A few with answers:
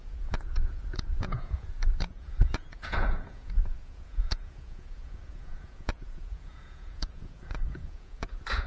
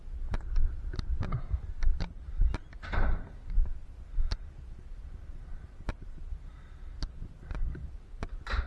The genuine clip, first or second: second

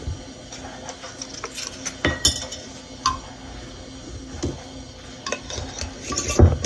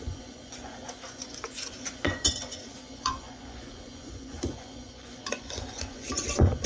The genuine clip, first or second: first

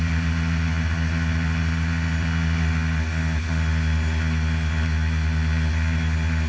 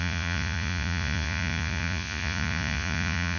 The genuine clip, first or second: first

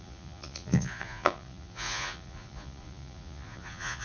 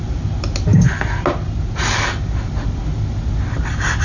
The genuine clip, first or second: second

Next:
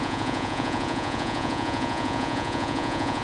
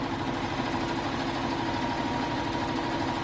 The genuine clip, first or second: second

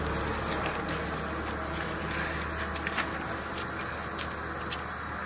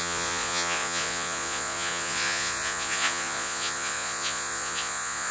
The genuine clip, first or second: first